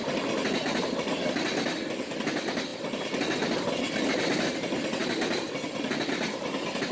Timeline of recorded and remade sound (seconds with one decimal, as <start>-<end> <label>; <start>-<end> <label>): 0.0-6.9 recorded